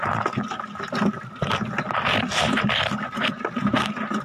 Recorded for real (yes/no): yes